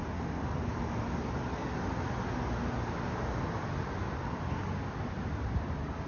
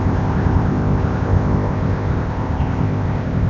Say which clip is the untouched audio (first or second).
first